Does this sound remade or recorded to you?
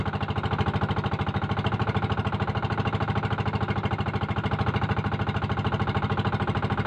recorded